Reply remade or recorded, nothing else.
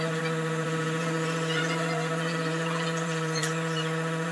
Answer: remade